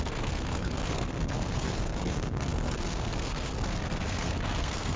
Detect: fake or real fake